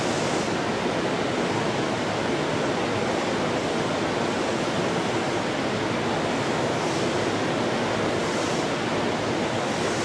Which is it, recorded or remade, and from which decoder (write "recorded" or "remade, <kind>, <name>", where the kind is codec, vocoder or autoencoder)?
recorded